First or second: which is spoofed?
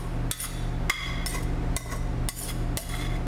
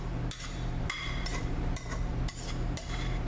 second